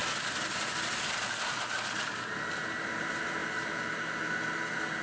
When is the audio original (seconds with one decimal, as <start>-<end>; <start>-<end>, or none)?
0.0-5.0